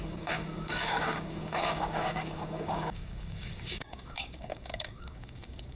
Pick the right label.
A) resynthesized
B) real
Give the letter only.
A